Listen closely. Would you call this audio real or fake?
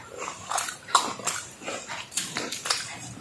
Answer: fake